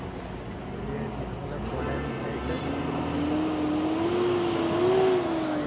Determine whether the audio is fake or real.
real